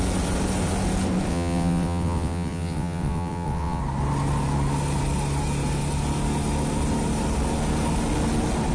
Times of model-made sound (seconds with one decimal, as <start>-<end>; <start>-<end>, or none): 1.3-3.8

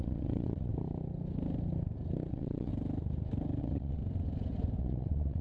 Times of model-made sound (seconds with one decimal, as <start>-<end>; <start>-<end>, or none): 0.0-0.7; 2.3-2.7; 3.6-4.0; 4.8-5.4

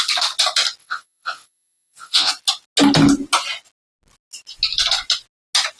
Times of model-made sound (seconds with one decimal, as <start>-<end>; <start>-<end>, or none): 0.8-2.3

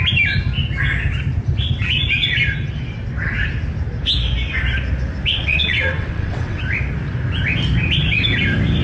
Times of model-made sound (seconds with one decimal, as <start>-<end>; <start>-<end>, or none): 5.3-6.6

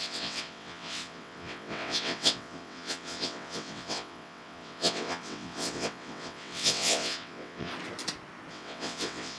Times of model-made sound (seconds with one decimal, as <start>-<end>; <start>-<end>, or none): 0.0-7.7; 8.5-9.4